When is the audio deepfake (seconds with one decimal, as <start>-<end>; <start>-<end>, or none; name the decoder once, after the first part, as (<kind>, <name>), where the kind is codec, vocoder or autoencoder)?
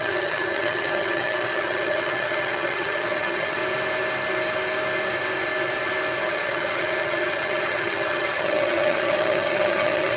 0.0-3.6 (vocoder, HiFi-GAN); 6.2-10.2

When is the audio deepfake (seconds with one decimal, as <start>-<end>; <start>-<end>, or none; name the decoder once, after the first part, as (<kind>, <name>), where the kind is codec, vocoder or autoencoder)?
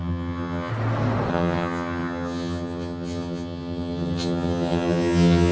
0.0-0.7 (vocoder, HiFi-GAN); 1.3-5.5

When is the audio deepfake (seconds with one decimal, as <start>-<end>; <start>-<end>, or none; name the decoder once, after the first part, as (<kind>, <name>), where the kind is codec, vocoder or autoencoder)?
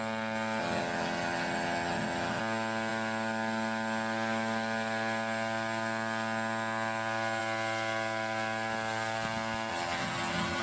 0.6-2.4 (vocoder, HiFi-GAN); 9.7-10.6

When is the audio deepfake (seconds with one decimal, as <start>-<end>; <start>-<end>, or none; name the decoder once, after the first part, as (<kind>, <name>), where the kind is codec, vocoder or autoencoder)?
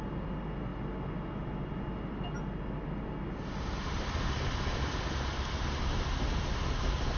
none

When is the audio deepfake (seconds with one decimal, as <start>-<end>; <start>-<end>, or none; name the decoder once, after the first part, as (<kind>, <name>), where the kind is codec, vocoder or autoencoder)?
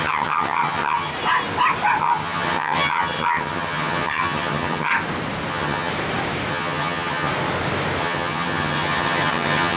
0.0-1.1 (vocoder, HiFi-GAN); 2.0-4.9; 5.5-5.9; 6.5-7.3; 8.0-9.8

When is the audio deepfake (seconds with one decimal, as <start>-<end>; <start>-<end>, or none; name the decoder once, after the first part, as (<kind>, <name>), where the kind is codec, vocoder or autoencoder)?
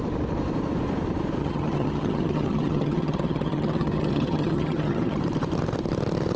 1.4-5.2 (vocoder, HiFi-GAN)